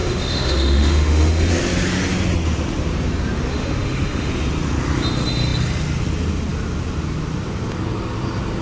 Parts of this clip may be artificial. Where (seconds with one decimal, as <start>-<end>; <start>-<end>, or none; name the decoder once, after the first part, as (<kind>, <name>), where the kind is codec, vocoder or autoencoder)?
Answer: 0.0-1.5 (autoencoder, DAC-VAE); 3.5-4.3